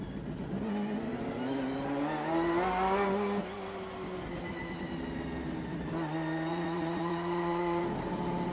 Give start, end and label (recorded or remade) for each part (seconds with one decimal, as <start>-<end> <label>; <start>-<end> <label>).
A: 0.0-6.5 recorded; 6.5-7.8 remade; 7.8-8.5 recorded